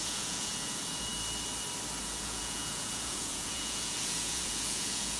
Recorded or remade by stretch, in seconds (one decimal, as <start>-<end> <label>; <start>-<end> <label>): 0.0-1.1 remade; 1.1-2.0 recorded; 2.0-5.2 remade